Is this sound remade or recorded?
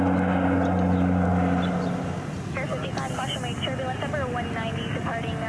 recorded